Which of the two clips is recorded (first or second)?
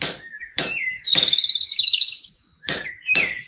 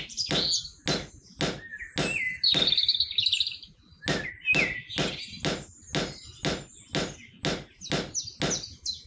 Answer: second